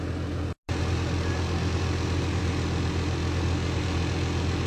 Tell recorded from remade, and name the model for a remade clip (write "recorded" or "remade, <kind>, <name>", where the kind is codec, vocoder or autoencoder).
recorded